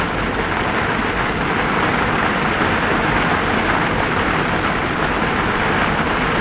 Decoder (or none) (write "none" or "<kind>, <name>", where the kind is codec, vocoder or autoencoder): none